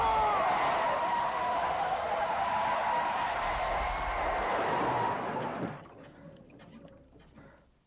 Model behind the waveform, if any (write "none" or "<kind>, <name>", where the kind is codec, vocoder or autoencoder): none